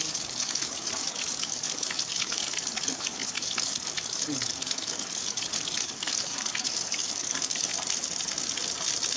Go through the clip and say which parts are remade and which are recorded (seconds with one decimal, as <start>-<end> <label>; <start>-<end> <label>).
0.0-7.7 remade; 7.7-9.2 recorded

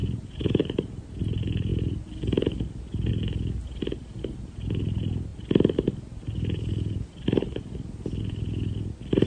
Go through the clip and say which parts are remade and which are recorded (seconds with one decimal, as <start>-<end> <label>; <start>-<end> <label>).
0.0-0.6 remade; 0.6-9.3 recorded